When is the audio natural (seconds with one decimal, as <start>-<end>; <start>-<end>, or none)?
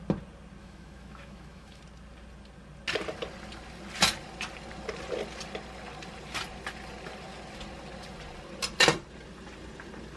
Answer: 0.0-0.6; 1.8-10.2